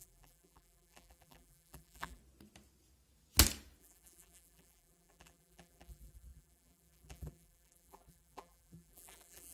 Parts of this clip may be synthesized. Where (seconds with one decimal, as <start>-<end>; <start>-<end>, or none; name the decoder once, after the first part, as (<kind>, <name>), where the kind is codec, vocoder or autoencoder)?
0.0-2.2 (vocoder, BigVGAN v2); 3.8-9.5

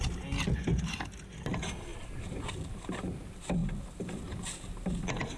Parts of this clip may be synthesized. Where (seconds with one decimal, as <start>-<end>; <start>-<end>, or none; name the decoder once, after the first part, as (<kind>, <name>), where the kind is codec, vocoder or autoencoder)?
1.9-3.2 (vocoder, BigVGAN v2)

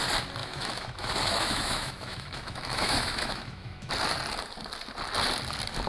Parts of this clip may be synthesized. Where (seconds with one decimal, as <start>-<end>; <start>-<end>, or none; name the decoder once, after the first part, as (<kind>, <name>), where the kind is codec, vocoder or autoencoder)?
0.4-3.9 (autoencoder, DAC-VAE)

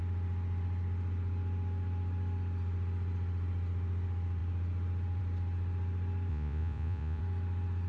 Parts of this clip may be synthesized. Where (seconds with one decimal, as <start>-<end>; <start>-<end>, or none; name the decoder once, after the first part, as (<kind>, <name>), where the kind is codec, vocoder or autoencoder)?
6.3-7.2 (vocoder, Vocos)

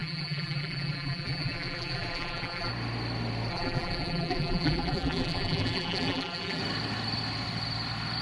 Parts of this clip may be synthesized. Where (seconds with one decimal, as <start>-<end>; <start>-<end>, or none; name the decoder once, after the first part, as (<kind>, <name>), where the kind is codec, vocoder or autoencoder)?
0.0-2.7 (vocoder, BigVGAN v2); 3.5-6.6